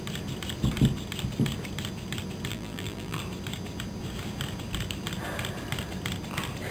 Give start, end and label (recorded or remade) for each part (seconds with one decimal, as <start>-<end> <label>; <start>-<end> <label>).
0.0-2.5 recorded; 2.5-3.2 remade; 3.2-6.7 recorded

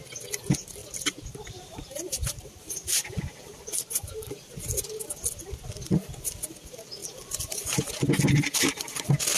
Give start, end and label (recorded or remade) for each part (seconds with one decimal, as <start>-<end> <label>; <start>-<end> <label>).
0.0-0.8 recorded; 0.8-4.3 remade; 4.3-7.0 recorded; 7.0-7.8 remade; 7.8-9.4 recorded

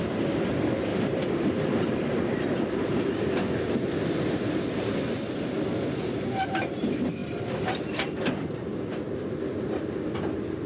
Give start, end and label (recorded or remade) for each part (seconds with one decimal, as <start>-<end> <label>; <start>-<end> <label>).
0.0-0.9 recorded; 0.9-2.0 remade; 2.0-7.2 recorded; 7.2-7.9 remade; 7.9-10.7 recorded

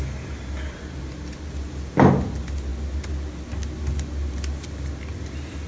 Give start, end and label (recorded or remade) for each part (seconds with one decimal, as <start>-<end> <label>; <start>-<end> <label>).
0.0-5.7 recorded

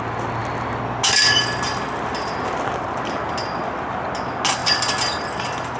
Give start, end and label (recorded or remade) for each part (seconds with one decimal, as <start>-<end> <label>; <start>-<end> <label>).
0.0-5.8 recorded

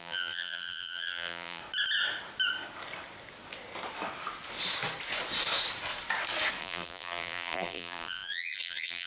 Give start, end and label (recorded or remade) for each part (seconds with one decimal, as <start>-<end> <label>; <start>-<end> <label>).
0.0-1.6 remade; 1.6-6.6 recorded; 6.6-9.1 remade

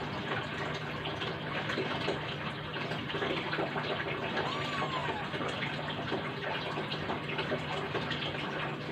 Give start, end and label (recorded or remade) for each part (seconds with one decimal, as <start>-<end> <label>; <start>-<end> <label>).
0.0-2.7 recorded; 2.7-3.7 remade; 3.7-8.9 recorded